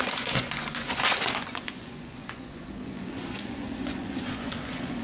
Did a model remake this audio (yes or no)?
yes